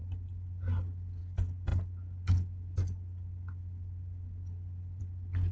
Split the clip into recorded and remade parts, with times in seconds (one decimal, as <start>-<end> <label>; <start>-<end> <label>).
0.0-5.5 recorded